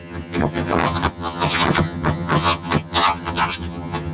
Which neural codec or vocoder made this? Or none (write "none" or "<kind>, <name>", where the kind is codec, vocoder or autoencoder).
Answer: vocoder, HiFi-GAN